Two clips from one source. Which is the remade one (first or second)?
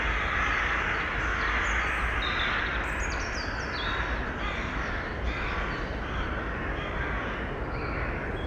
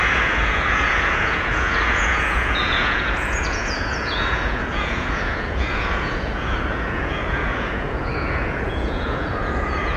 second